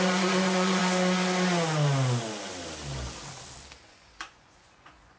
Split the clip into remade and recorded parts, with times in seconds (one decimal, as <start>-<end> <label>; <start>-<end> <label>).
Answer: 0.0-0.8 remade; 0.8-3.9 recorded; 3.9-5.2 remade